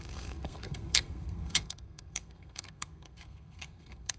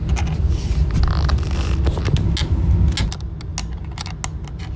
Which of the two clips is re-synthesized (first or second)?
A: first